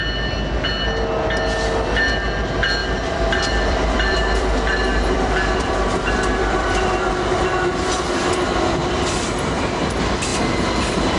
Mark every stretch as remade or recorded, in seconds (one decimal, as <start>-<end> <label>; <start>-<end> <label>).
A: 0.0-2.8 recorded; 2.8-7.1 remade; 7.1-8.8 recorded; 8.8-9.6 remade; 9.6-11.2 recorded